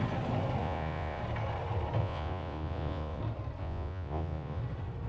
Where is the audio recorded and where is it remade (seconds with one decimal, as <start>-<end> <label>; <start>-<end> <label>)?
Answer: 0.0-0.6 recorded; 0.6-1.2 remade; 1.2-2.0 recorded; 2.0-3.2 remade; 3.2-3.6 recorded; 3.6-4.6 remade; 4.6-5.1 recorded